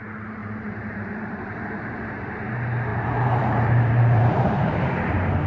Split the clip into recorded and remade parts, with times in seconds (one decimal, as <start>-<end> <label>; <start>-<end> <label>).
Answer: 0.0-0.4 recorded; 0.4-2.3 remade; 2.3-2.9 recorded; 2.9-4.9 remade; 4.9-5.5 recorded